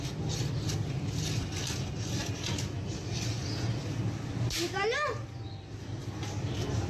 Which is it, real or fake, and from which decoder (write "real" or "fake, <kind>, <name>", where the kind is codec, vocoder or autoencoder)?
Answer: real